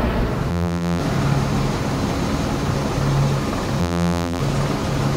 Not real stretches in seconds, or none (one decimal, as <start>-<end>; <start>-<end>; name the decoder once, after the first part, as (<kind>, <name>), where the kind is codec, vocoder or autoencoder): 0.5-1.0 (vocoder, BigVGAN v2); 3.8-4.4